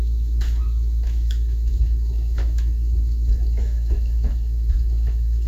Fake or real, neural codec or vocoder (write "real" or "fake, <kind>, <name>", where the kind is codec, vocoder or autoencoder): fake, autoencoder, DAC-VAE